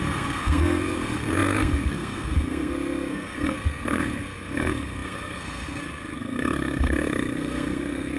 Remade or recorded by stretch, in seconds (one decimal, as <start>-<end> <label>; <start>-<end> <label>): 0.0-8.2 remade